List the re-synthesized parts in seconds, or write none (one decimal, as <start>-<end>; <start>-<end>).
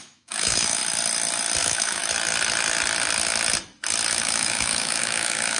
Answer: 0.0-0.8; 1.6-2.0; 4.1-5.6